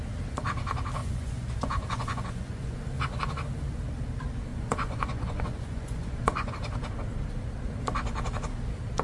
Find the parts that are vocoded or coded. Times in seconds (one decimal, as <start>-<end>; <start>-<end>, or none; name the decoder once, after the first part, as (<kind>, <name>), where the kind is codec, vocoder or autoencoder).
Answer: 1.0-2.8 (vocoder, Vocos); 4.5-6.5